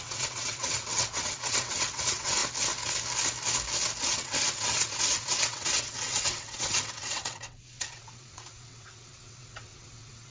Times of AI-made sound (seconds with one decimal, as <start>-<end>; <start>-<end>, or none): 0.0-2.4; 4.0-10.3